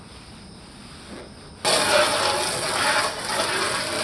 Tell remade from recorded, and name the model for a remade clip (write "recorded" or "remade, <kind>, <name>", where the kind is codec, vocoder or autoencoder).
recorded